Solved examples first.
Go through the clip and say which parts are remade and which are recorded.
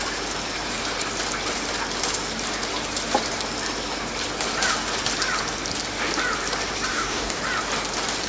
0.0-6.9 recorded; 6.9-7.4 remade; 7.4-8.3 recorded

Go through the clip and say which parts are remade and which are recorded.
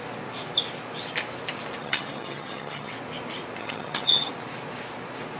0.0-1.8 recorded; 1.8-2.9 remade; 2.9-3.6 recorded; 3.6-4.3 remade; 4.3-5.4 recorded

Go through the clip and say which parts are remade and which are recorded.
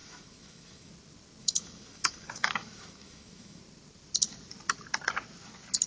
0.0-0.9 remade; 0.9-1.4 recorded; 1.4-3.6 remade; 3.6-5.9 recorded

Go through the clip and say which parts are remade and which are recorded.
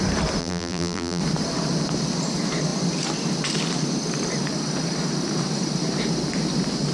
0.0-0.4 recorded; 0.4-1.2 remade; 1.2-6.9 recorded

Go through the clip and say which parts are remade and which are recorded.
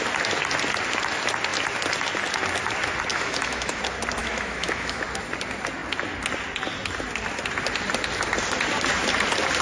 0.0-3.1 recorded; 3.1-3.8 remade; 3.8-4.2 recorded; 4.2-5.0 remade; 5.0-9.6 recorded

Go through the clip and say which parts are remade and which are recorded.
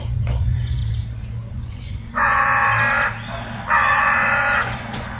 0.0-0.8 remade; 0.8-1.5 recorded; 1.5-2.6 remade; 2.6-3.9 recorded; 3.9-5.2 remade